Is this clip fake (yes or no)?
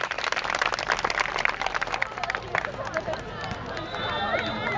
no